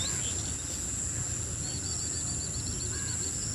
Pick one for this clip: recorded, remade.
recorded